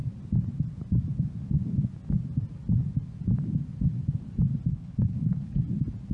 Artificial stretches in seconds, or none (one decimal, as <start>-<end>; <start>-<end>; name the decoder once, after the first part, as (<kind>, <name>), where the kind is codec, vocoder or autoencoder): 4.7-5.6 (codec, HILCodec)